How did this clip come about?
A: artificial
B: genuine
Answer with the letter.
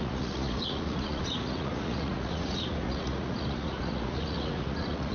A